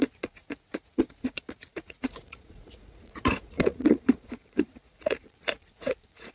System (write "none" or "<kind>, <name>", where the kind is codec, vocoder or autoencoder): vocoder, Vocos